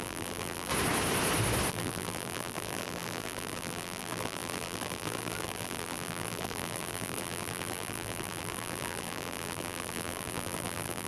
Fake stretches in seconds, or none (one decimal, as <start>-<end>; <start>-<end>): 0.0-0.7; 1.7-11.1